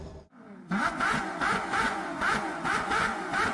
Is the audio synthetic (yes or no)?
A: yes